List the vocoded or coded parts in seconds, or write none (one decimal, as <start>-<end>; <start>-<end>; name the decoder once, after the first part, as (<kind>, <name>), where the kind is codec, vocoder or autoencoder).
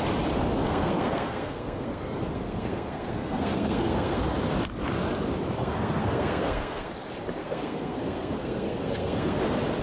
0.6-4.2 (codec, SNAC); 5.6-6.9; 7.4-9.4